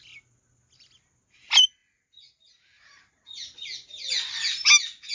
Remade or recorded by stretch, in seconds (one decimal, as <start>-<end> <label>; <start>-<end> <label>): 0.0-5.1 recorded